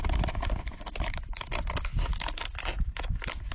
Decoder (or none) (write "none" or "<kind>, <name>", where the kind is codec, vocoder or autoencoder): none